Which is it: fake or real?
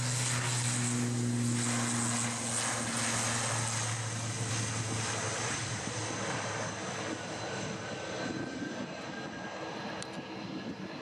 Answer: real